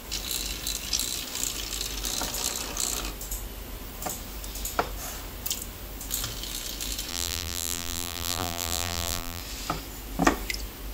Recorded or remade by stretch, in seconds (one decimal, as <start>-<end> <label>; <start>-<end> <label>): 0.0-7.1 recorded; 7.1-9.4 remade; 9.4-10.9 recorded